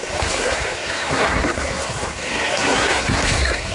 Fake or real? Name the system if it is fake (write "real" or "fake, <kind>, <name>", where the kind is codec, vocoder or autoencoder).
fake, codec, SNAC